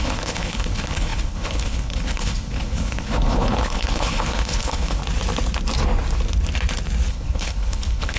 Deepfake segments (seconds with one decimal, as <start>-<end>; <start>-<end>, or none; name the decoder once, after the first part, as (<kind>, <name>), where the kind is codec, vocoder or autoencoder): 0.0-5.0 (codec, HILCodec); 7.1-8.2